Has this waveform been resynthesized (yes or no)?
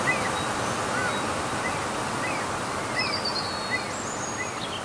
no